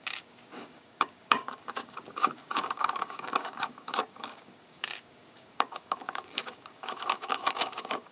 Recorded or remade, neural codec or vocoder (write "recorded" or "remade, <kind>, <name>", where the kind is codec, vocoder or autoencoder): remade, codec, DAC